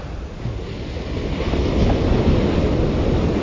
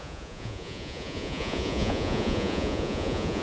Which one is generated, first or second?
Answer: second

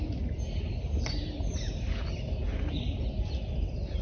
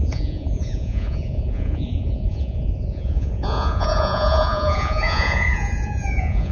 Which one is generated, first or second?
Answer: second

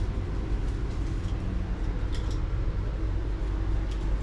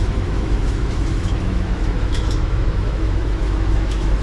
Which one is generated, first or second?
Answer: second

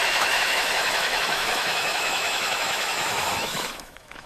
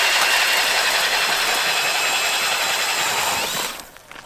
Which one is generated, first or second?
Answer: first